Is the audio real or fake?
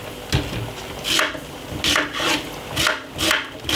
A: real